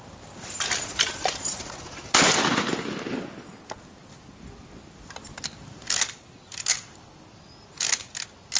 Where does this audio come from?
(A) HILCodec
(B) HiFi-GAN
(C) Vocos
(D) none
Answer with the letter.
D